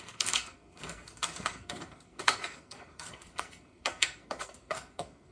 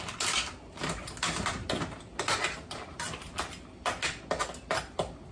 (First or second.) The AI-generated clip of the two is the first